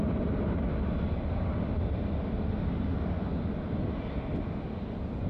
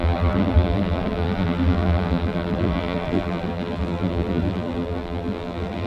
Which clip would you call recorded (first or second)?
first